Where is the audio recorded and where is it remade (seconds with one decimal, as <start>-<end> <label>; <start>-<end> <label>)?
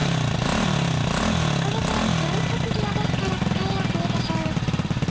0.0-5.1 recorded